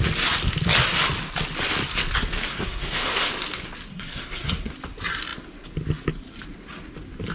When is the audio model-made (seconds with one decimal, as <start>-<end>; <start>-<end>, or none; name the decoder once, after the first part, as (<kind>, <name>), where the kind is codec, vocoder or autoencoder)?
2.5-3.3 (codec, SNAC); 3.9-4.7